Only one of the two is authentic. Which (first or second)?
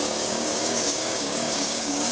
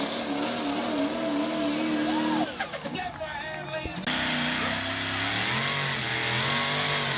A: second